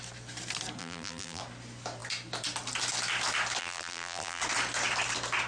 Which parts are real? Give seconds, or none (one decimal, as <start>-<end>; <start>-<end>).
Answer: 0.0-0.8; 1.4-3.6; 4.4-5.5